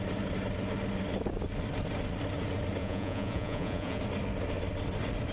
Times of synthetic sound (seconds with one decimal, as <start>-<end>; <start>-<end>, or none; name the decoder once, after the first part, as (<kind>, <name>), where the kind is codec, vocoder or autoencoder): 2.8-4.0 (vocoder, Vocos)